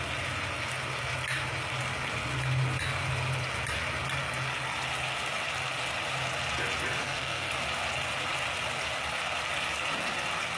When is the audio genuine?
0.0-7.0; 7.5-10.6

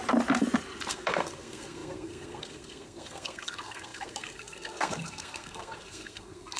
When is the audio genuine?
0.0-0.9